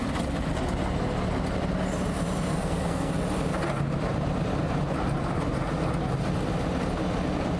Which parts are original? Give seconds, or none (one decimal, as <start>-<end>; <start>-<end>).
0.0-2.6; 3.1-7.6